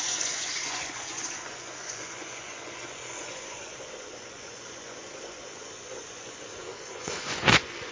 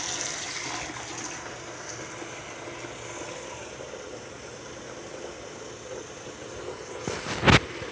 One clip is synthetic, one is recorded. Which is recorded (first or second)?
second